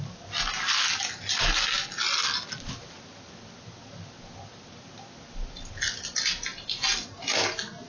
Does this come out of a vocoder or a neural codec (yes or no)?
no